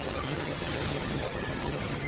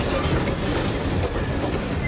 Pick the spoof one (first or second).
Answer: first